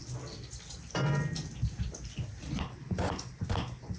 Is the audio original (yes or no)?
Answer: yes